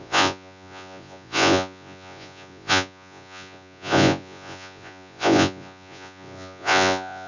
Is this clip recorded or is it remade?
remade